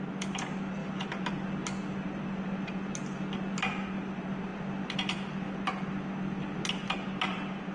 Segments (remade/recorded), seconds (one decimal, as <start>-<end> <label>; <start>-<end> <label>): 0.0-7.7 recorded